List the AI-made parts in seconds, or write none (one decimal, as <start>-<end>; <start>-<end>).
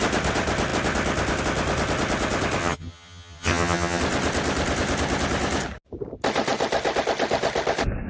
2.6-4.0